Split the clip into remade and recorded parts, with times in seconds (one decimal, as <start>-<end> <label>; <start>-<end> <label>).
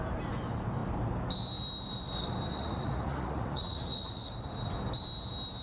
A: 0.0-2.5 recorded; 2.5-4.3 remade; 4.3-5.6 recorded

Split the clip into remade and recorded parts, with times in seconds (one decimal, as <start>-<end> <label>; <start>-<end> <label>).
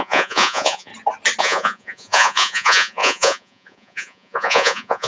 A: 0.0-0.9 remade; 0.9-1.4 recorded; 1.4-5.1 remade